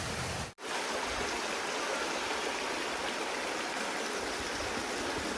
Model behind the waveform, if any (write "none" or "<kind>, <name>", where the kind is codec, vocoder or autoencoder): none